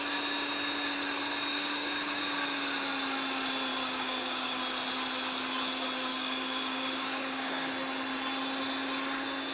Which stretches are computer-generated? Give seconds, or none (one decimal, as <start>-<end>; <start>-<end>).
1.5-2.2; 3.7-4.6; 6.1-7.7